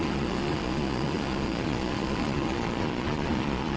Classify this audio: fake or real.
fake